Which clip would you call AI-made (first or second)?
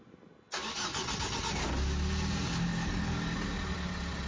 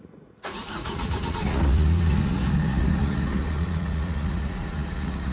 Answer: second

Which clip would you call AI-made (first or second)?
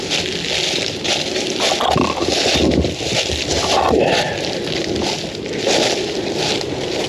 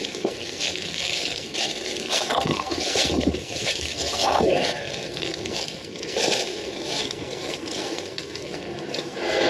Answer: second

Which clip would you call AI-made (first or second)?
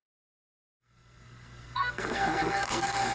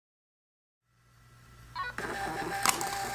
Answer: first